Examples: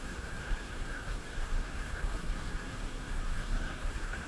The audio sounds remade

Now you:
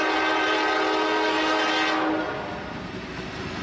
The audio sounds recorded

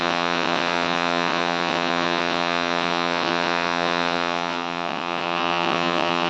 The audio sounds remade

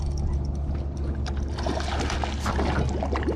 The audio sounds recorded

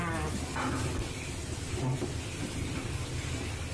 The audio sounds recorded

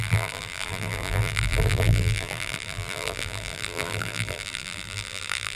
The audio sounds remade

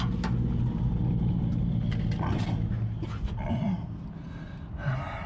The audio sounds recorded